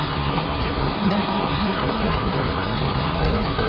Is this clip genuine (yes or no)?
no